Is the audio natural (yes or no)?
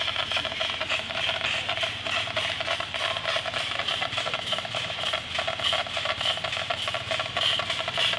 yes